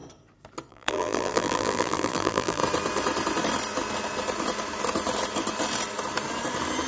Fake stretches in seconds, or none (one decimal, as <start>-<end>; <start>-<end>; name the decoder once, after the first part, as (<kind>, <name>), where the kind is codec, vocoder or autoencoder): 0.7-2.6 (vocoder, BigVGAN v2)